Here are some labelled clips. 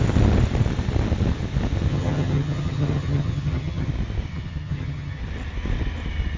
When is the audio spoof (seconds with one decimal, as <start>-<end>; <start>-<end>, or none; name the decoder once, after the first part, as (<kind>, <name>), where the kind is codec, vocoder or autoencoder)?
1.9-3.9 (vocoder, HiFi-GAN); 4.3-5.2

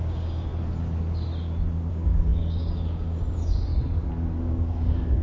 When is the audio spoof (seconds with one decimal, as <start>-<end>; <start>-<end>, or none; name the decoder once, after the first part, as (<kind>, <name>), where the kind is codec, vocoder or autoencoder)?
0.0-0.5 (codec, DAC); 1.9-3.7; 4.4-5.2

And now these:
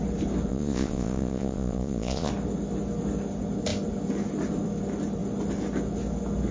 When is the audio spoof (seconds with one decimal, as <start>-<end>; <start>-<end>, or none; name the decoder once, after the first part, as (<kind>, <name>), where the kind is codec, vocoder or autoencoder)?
0.5-2.3 (vocoder, Vocos)

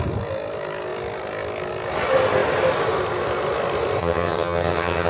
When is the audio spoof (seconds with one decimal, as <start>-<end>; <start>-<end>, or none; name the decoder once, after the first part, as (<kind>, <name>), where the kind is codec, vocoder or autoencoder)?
4.0-5.1 (vocoder, HiFi-GAN)

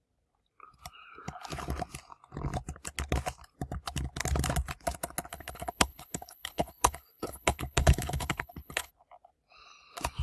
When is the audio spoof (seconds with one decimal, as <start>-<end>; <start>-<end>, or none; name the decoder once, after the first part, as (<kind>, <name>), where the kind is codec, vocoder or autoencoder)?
5.3-8.9 (codec, HILCodec)